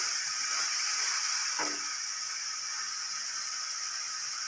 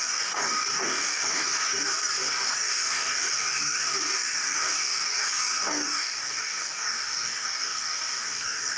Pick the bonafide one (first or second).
first